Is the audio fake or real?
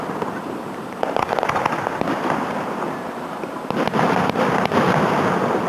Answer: fake